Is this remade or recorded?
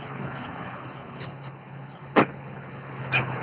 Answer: remade